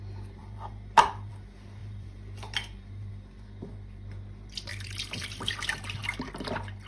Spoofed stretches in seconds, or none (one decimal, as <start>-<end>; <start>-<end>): 0.4-1.3; 1.8-3.1; 4.7-5.6